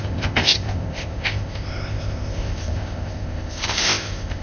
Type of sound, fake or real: fake